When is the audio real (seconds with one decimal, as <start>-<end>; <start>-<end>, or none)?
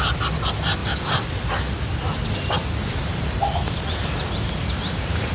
0.0-0.8; 4.0-5.3